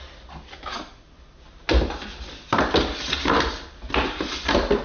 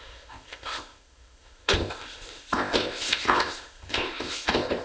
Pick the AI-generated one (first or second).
second